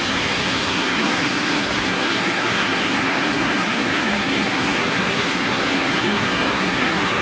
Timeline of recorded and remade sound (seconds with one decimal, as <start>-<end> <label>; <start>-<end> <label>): 0.0-7.2 remade